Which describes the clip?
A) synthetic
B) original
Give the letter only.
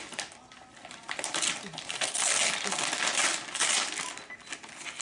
B